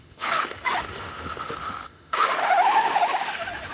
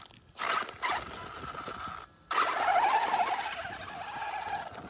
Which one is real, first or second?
second